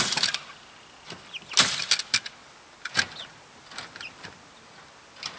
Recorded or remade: recorded